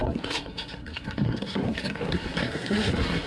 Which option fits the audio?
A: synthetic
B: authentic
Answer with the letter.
A